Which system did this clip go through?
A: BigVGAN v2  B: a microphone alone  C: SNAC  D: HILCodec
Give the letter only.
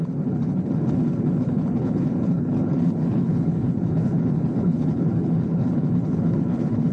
D